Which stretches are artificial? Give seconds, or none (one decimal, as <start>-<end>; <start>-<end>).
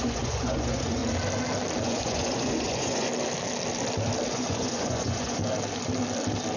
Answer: 0.0-1.0; 1.8-3.1; 4.3-5.4